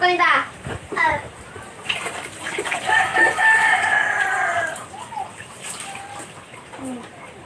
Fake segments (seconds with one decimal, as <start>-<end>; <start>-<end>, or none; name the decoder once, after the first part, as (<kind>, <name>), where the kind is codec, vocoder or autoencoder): 0.0-3.1 (vocoder, BigVGAN v2); 6.4-7.5